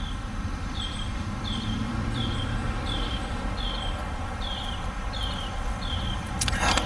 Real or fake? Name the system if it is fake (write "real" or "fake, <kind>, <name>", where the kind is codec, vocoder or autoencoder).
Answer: fake, vocoder, BigVGAN v2